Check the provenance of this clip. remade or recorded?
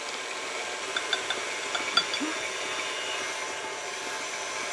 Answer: recorded